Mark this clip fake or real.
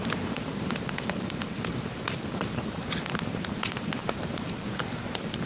fake